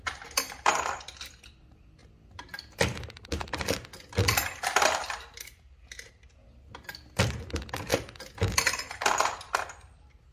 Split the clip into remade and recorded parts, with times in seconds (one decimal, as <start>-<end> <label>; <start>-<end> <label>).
0.0-10.3 recorded